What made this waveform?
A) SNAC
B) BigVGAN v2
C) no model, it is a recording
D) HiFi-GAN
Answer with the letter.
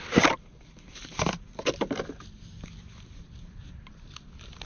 C